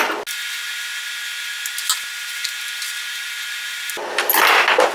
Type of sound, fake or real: real